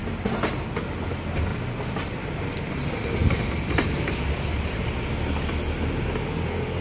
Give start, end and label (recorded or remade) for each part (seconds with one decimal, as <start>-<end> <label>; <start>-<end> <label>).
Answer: 0.0-1.5 recorded; 1.5-2.7 remade; 2.7-3.2 recorded; 3.2-4.8 remade; 4.8-6.8 recorded